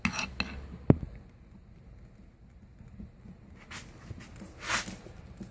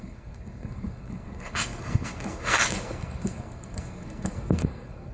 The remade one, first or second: second